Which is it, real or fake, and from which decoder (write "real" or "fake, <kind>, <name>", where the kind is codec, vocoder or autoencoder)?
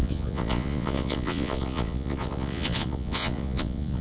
fake, vocoder, Vocos